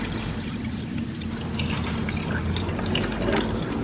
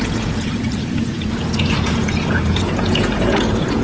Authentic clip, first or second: first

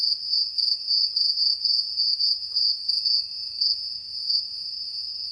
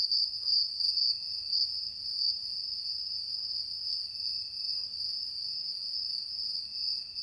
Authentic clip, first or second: second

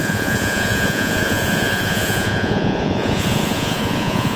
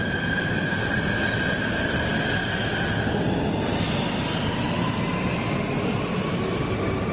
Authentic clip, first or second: second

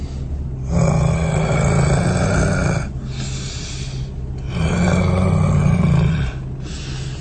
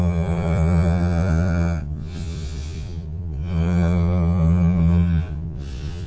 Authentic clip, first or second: first